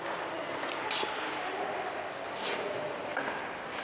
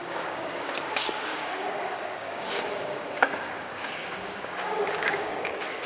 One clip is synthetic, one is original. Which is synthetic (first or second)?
second